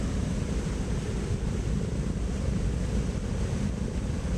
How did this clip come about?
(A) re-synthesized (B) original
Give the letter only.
A